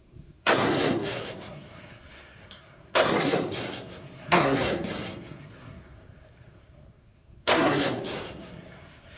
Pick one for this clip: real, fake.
fake